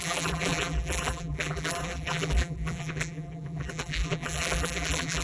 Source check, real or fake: fake